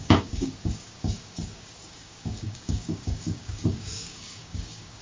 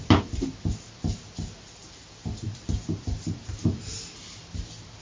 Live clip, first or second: second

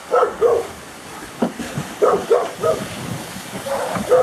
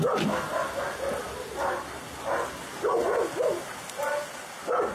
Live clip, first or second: second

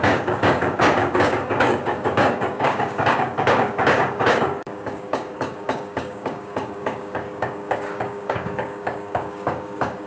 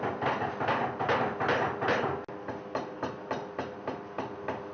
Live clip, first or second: second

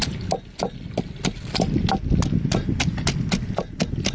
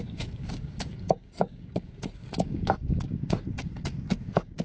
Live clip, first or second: first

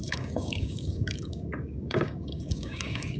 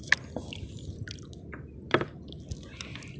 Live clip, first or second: second